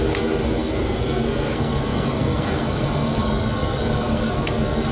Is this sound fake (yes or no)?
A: yes